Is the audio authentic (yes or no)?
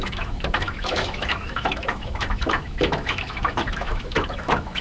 no